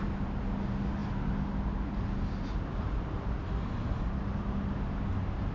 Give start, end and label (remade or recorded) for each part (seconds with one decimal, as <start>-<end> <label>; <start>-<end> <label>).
0.0-5.5 recorded